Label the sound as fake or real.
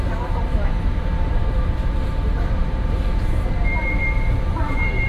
fake